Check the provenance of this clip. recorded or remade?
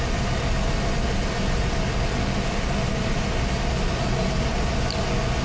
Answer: recorded